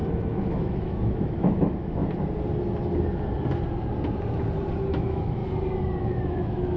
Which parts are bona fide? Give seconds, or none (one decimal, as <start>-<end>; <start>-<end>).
2.0-4.9; 5.4-6.0